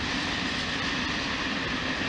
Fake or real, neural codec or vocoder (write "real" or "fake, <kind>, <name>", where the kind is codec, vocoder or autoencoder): real